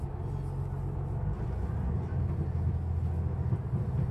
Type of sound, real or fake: real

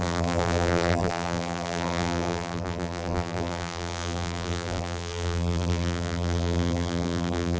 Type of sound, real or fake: fake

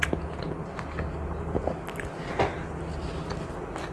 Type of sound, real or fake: real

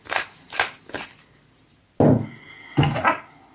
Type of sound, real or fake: real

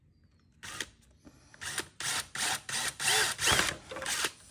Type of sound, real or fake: real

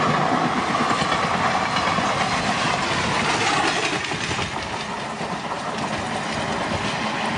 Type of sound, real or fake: real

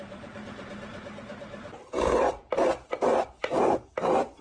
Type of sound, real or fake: fake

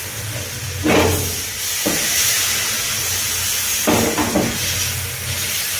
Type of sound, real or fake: real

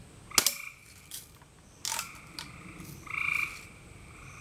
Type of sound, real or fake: real